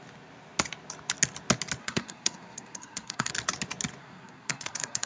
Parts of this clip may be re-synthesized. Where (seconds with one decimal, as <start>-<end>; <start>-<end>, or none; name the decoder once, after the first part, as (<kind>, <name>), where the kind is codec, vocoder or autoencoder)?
1.8-3.3 (codec, SNAC); 4.0-5.1